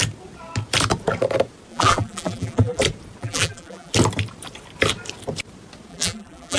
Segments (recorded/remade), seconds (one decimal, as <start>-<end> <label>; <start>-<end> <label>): 0.0-1.7 recorded; 1.7-2.8 remade; 2.8-3.2 recorded; 3.2-3.9 remade; 3.9-5.9 recorded; 5.9-6.6 remade